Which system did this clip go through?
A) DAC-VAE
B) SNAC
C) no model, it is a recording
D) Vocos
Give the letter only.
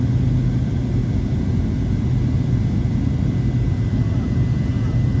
C